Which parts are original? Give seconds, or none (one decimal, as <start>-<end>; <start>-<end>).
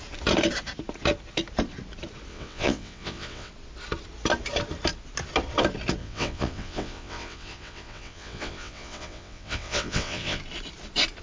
0.0-2.3; 3.5-6.0; 10.4-11.2